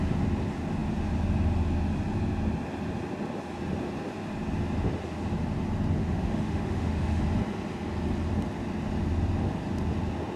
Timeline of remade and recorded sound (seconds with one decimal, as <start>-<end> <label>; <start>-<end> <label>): 0.0-6.0 recorded; 6.0-7.2 remade; 7.2-10.4 recorded